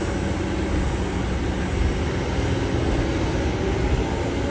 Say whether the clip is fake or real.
real